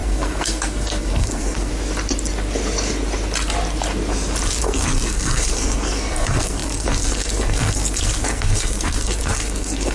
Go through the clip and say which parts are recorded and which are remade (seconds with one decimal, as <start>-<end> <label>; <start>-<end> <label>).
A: 0.0-1.7 remade; 1.7-4.6 recorded; 4.6-9.9 remade